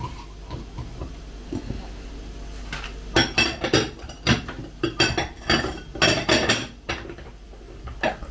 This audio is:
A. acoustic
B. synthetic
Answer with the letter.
A